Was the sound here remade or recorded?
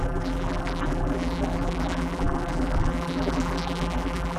remade